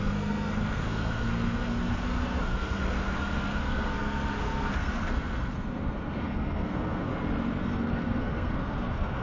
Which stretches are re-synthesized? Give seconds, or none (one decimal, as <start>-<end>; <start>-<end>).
0.0-7.1; 7.6-9.2